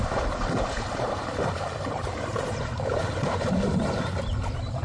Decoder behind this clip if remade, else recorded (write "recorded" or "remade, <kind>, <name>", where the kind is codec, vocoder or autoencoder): remade, vocoder, BigVGAN v2